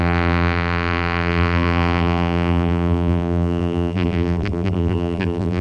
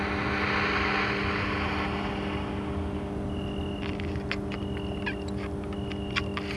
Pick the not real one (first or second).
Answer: first